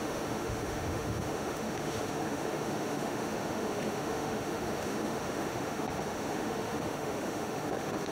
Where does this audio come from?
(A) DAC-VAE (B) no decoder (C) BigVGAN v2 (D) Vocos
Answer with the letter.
A